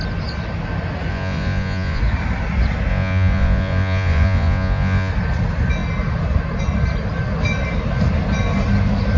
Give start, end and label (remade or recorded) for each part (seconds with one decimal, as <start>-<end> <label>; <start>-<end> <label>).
0.0-1.1 recorded; 1.1-2.0 remade; 2.0-2.9 recorded; 2.9-5.1 remade; 5.1-9.2 recorded